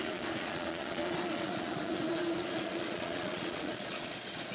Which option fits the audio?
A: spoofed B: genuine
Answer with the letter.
A